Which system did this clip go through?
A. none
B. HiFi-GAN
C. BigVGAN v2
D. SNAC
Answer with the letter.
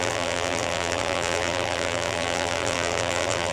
C